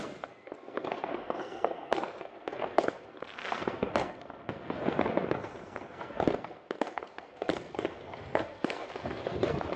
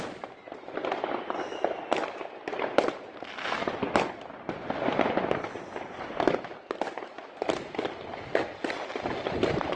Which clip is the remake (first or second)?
first